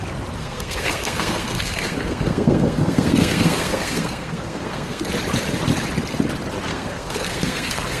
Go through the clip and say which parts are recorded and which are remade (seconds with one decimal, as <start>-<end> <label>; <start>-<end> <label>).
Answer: 0.0-0.4 recorded; 0.4-5.1 remade; 5.1-6.7 recorded; 6.7-8.0 remade